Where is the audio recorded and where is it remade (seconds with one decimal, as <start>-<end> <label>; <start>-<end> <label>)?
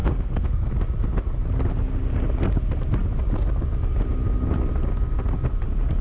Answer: 0.0-0.7 remade; 0.7-6.0 recorded